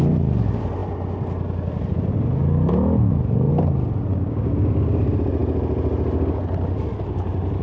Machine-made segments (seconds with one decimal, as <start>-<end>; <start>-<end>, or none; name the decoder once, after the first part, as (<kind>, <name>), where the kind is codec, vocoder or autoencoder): 4.1-4.7 (codec, DAC)